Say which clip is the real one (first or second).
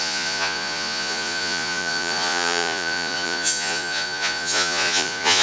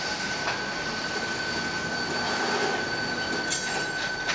second